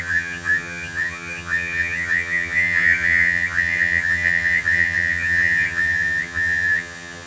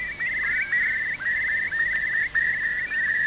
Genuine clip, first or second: second